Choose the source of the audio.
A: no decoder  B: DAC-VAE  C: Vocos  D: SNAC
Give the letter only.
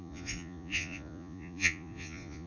C